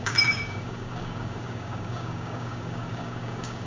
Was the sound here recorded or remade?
remade